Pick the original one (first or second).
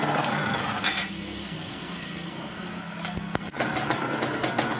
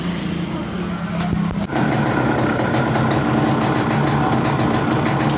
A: second